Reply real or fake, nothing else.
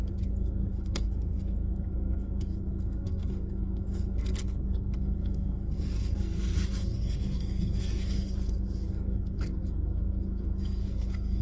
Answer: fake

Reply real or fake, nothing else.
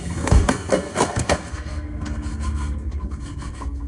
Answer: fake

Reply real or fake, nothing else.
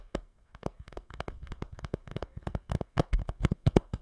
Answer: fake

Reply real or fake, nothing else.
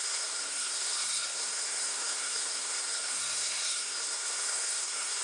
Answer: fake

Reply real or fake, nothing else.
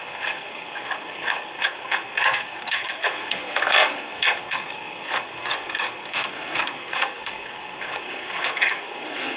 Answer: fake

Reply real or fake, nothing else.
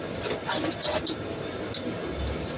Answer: real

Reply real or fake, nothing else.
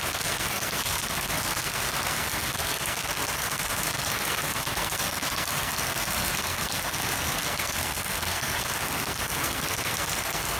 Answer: fake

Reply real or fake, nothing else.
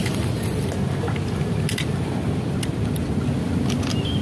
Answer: real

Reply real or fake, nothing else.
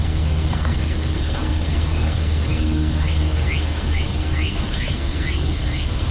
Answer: fake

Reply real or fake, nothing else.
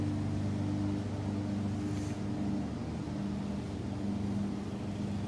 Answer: real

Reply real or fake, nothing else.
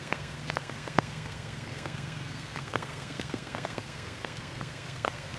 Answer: fake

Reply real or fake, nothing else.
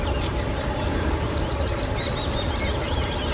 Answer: real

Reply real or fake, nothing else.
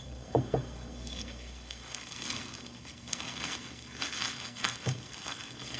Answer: fake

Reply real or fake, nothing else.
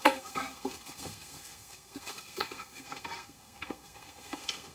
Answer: fake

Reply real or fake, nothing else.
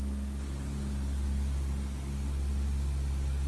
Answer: real